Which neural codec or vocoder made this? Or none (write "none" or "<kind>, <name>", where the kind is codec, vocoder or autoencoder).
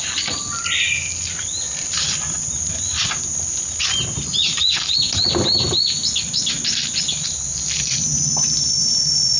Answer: none